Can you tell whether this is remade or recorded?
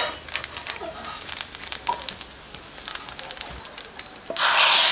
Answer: recorded